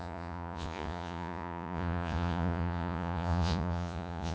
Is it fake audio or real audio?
fake